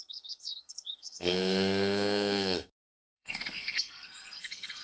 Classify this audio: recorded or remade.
remade